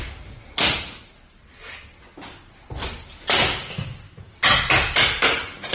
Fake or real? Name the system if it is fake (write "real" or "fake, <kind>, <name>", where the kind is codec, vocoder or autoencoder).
real